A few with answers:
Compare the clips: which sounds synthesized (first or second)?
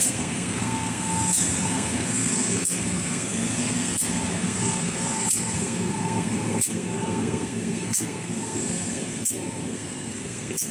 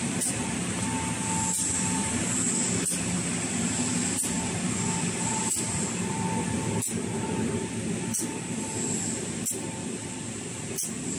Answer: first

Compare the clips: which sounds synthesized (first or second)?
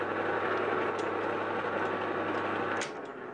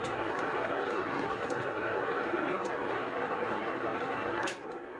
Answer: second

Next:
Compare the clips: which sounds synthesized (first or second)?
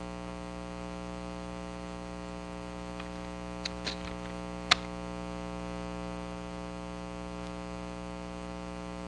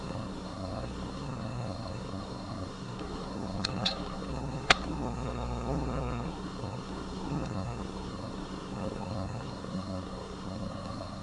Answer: second